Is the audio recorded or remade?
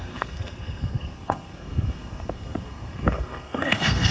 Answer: remade